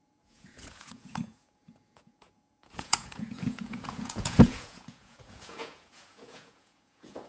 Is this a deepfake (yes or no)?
yes